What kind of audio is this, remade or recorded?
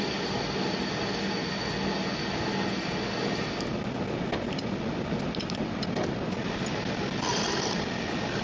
recorded